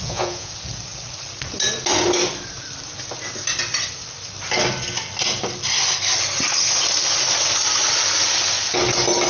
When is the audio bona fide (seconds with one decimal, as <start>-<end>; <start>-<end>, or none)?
0.5-9.3